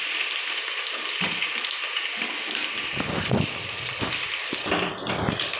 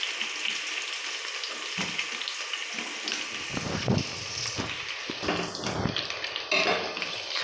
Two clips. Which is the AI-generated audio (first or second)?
first